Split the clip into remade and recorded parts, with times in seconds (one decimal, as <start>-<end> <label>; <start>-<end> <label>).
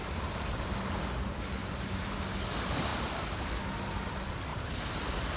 0.0-1.6 recorded; 1.6-2.1 remade; 2.1-2.9 recorded; 2.9-3.6 remade; 3.6-4.5 recorded; 4.5-5.0 remade; 5.0-5.4 recorded